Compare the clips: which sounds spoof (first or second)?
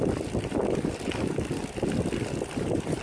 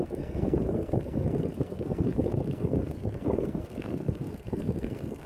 second